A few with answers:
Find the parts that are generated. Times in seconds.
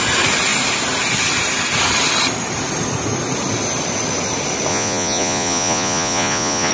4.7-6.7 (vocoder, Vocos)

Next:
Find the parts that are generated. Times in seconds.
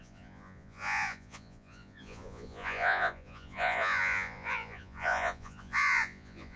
0.0-6.6 (vocoder, Vocos)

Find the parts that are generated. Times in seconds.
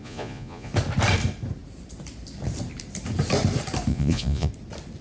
0.0-0.7 (vocoder, Vocos); 3.9-4.5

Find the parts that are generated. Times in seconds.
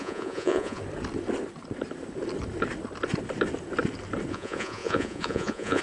0.0-0.8 (vocoder, Vocos); 4.3-5.8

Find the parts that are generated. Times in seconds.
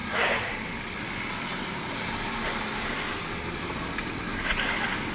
none